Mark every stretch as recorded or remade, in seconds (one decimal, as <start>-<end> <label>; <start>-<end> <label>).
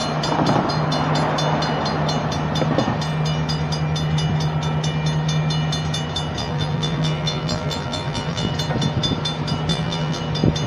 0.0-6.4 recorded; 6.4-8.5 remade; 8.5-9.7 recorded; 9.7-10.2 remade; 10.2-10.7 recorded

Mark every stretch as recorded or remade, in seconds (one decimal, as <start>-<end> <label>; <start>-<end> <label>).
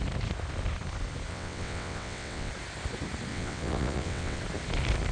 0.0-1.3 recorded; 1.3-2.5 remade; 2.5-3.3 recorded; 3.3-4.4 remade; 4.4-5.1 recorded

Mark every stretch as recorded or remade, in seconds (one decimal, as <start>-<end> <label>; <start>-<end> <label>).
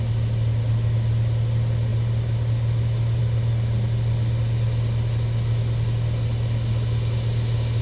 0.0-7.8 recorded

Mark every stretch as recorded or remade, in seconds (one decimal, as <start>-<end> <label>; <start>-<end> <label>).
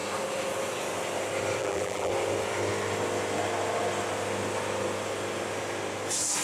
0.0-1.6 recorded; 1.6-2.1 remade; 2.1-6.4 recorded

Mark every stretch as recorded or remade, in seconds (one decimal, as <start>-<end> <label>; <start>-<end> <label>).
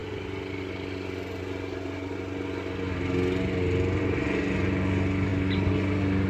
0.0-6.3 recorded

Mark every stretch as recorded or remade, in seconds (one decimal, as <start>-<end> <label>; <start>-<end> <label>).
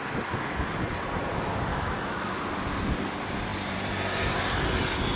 0.0-1.7 recorded; 1.7-2.4 remade; 2.4-5.2 recorded